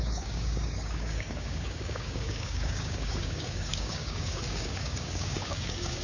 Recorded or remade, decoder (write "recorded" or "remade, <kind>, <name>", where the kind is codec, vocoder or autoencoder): remade, codec, DAC